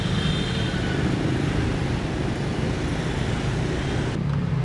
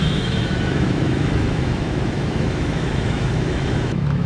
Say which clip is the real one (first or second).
first